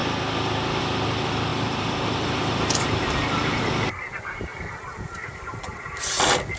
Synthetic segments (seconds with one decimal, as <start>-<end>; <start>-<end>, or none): 1.5-3.6; 4.5-6.0